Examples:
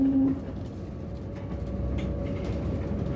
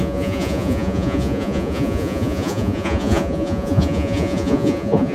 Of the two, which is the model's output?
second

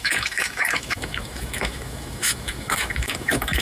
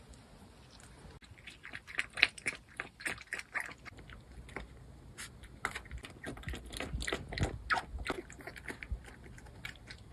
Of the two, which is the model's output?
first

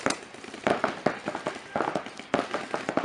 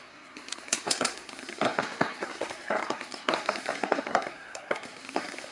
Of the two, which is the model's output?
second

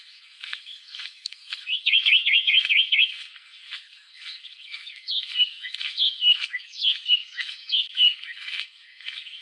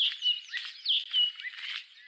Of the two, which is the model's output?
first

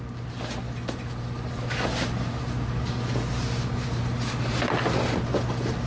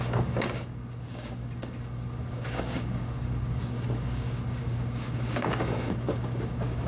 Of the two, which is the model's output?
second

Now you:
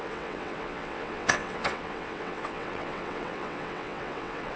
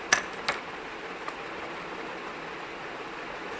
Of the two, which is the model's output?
first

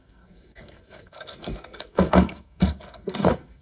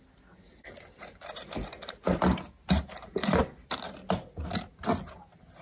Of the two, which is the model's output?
first